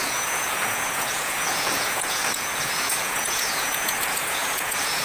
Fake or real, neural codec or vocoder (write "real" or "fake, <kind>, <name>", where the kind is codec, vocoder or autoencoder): fake, vocoder, Vocos